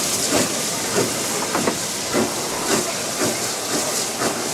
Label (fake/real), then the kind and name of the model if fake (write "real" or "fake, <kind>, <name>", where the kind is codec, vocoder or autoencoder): real